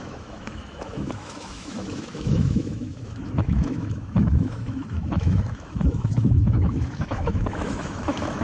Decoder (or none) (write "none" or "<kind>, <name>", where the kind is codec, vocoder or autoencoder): autoencoder, DAC-VAE